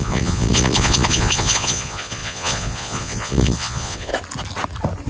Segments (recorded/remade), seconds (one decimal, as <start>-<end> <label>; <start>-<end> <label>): 0.0-4.1 remade; 4.1-5.1 recorded